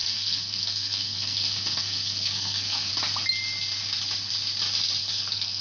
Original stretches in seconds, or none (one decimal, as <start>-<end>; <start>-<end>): 2.9-5.0